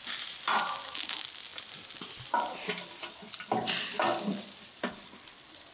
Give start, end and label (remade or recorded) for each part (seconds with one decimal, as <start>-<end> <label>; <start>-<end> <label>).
0.0-5.7 recorded